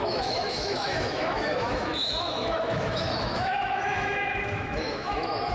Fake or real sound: fake